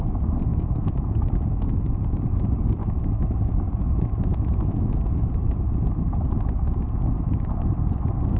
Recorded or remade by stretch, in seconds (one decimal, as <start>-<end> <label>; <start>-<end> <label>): 0.0-0.5 recorded; 0.5-1.2 remade; 1.2-2.8 recorded; 2.8-3.4 remade; 3.4-4.3 recorded; 4.3-5.2 remade; 5.2-8.4 recorded